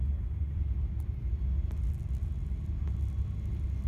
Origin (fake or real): real